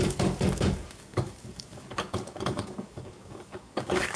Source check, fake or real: fake